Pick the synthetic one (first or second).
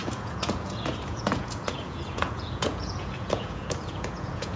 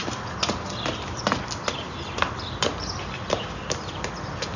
first